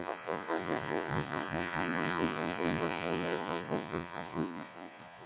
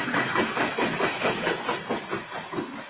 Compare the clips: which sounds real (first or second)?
second